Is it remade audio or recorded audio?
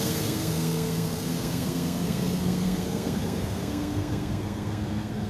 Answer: remade